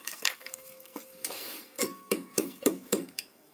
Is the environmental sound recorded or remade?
remade